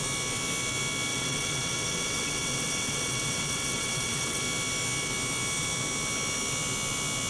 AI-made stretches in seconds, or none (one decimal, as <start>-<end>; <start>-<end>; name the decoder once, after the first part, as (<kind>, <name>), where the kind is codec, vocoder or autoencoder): 1.1-4.4 (vocoder, WaveNeXt)